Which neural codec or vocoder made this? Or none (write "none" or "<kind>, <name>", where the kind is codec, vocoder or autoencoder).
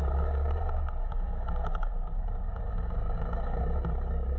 codec, DAC